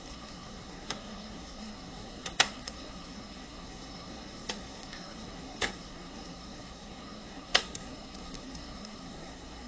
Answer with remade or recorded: remade